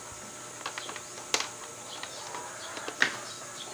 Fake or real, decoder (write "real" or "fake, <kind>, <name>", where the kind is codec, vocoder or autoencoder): real